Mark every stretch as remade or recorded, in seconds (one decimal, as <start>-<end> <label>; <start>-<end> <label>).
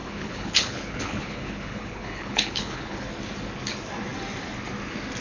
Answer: 0.0-3.1 remade; 3.1-5.2 recorded